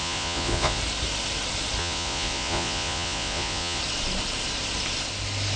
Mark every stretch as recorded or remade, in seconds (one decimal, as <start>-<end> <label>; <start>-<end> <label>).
0.0-0.8 remade; 0.8-1.8 recorded; 1.8-3.8 remade; 3.8-5.6 recorded